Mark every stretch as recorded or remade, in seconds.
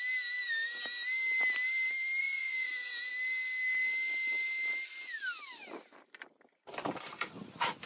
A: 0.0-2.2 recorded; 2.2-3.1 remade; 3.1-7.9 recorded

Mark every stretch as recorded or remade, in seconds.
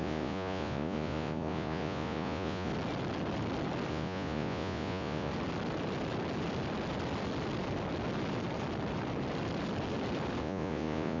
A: 0.0-2.7 remade; 2.7-3.9 recorded; 3.9-5.3 remade; 5.3-10.4 recorded; 10.4-11.2 remade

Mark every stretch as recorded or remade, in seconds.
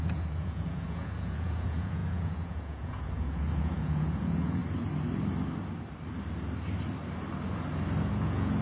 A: 0.0-4.6 remade; 4.6-8.1 recorded; 8.1-8.6 remade